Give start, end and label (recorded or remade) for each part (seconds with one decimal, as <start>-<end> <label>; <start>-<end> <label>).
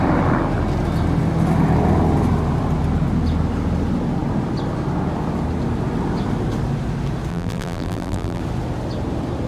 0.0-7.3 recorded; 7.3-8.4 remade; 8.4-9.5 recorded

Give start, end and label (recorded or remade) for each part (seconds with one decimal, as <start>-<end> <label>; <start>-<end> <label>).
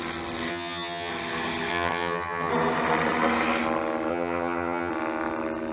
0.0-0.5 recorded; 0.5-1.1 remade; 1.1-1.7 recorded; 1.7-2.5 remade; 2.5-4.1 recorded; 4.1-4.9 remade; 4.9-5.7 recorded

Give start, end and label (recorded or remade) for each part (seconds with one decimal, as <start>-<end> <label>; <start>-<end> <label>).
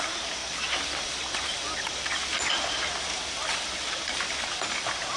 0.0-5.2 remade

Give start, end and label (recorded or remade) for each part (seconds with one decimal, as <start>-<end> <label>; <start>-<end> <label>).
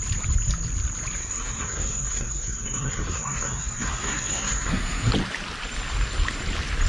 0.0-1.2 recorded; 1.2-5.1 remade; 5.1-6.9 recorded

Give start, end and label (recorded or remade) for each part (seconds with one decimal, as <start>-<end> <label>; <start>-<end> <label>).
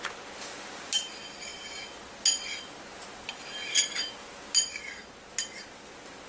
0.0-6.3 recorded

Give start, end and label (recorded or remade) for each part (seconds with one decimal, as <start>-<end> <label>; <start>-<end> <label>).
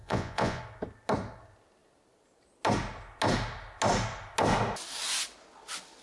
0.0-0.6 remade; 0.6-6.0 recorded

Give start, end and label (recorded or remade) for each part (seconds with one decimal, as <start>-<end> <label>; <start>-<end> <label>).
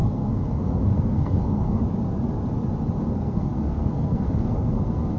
0.0-1.8 remade; 1.8-3.1 recorded; 3.1-5.2 remade